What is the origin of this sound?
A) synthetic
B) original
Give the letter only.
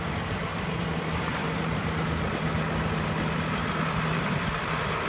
A